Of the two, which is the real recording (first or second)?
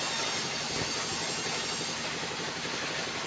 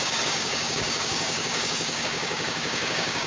first